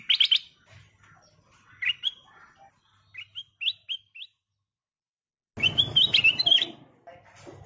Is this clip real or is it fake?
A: real